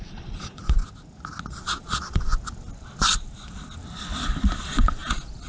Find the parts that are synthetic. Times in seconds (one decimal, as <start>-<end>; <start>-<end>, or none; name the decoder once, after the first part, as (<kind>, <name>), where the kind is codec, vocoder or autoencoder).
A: 0.0-0.8 (vocoder, Vocos); 1.5-2.3; 4.6-5.5